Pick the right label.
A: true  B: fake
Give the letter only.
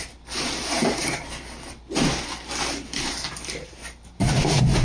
A